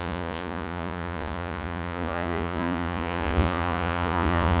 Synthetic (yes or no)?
yes